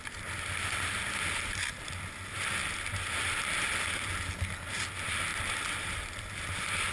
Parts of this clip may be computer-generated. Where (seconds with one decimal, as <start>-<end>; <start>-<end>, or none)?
none